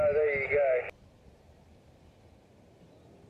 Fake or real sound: real